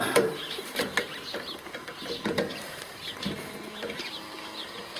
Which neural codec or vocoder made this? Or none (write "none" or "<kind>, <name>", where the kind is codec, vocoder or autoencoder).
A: vocoder, BigVGAN v2